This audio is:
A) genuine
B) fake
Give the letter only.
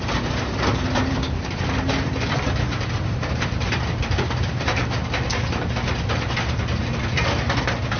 B